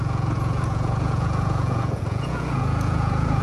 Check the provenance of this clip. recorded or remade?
remade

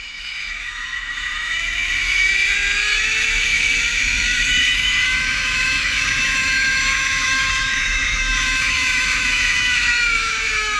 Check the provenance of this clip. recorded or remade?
remade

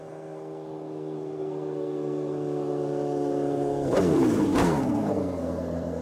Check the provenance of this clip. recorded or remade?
remade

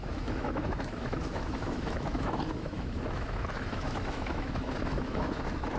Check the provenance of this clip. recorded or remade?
remade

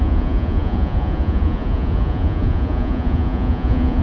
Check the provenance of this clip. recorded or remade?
remade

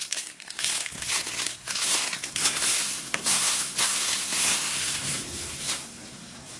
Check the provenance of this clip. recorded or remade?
remade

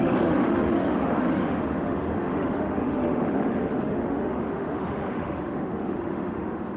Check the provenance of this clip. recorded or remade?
remade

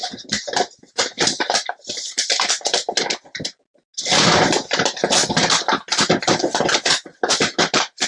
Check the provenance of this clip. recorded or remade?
recorded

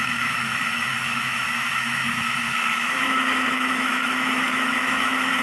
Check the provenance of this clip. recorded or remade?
remade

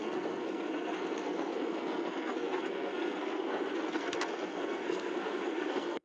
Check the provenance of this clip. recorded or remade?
remade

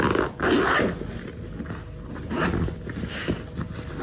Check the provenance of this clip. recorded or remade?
recorded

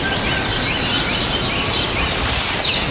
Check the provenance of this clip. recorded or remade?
recorded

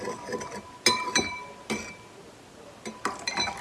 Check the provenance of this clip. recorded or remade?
recorded